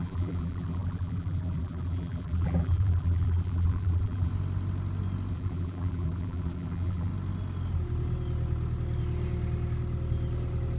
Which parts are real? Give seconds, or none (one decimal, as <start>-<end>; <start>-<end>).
4.3-5.3; 7.1-10.8